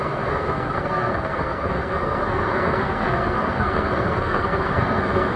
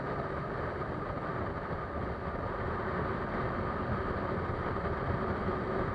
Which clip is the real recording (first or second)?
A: second